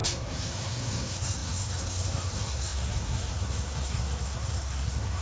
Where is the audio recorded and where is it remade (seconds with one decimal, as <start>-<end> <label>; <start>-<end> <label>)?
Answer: 0.0-5.2 remade